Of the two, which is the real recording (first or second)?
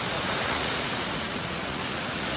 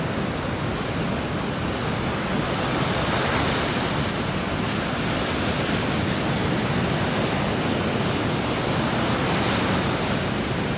second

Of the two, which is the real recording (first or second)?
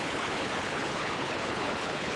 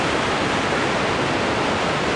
second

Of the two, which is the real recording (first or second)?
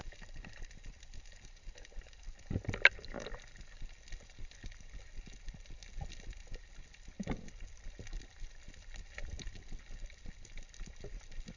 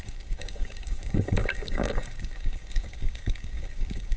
first